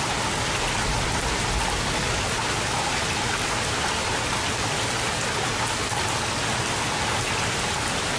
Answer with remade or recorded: recorded